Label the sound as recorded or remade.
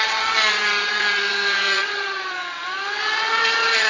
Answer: remade